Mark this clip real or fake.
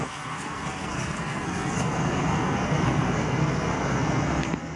fake